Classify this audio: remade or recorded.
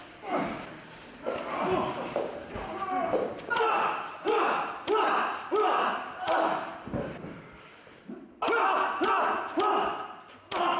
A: recorded